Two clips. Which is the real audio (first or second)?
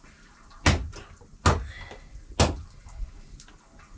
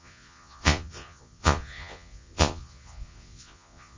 first